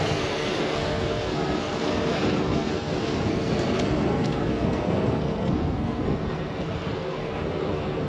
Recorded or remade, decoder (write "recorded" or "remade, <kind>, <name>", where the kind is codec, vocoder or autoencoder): remade, codec, SNAC